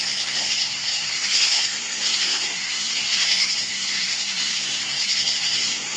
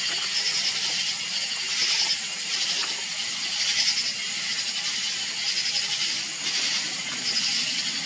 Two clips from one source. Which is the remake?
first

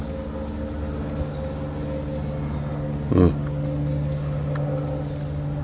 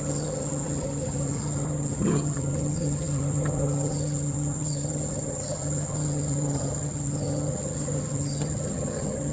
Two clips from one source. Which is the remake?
second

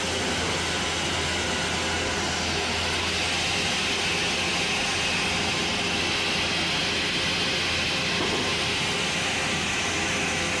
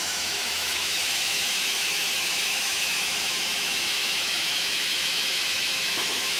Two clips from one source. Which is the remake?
second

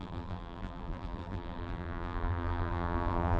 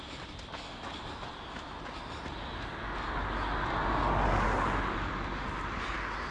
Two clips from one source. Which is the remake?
first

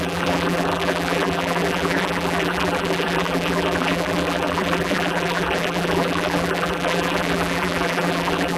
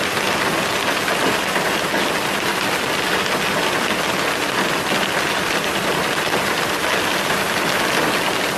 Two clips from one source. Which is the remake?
first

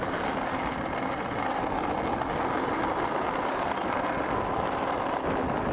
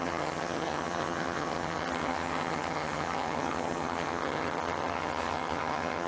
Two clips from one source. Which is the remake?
second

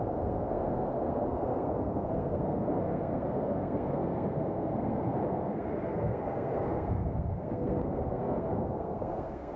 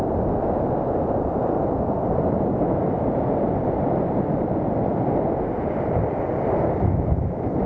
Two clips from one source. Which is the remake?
first